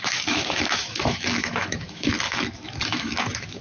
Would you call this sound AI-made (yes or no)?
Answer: yes